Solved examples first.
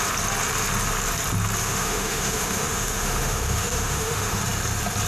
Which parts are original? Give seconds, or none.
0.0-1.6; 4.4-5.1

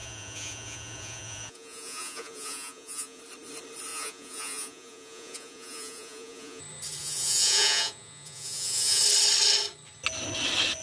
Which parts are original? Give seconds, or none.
3.2-3.9; 6.6-7.0; 9.0-10.8